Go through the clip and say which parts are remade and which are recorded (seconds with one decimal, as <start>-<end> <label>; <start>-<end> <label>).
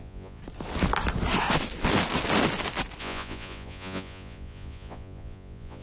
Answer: 0.0-0.4 remade; 0.4-3.0 recorded; 3.0-5.8 remade